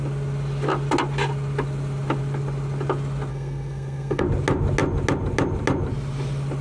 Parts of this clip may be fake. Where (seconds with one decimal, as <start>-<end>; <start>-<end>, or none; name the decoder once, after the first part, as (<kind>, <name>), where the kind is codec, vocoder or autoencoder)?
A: 3.3-4.2 (codec, SNAC)